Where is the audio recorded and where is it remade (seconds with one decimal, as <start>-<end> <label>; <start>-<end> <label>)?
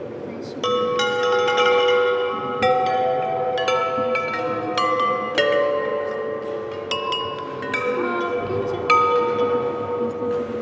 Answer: 0.0-10.6 recorded